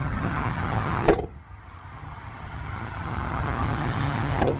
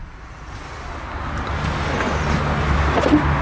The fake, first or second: first